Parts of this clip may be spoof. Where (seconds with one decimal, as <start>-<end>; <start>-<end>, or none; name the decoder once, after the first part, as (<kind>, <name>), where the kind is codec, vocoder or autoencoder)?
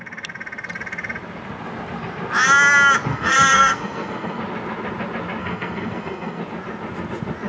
3.1-4.4 (codec, SNAC); 5.4-6.4